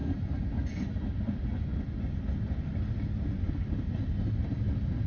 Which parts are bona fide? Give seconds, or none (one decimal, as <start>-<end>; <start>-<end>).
0.0-5.1